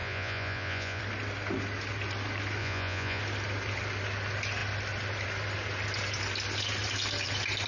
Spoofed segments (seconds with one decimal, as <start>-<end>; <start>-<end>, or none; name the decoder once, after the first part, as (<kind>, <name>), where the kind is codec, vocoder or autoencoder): 0.0-1.0 (vocoder, Vocos); 2.6-3.2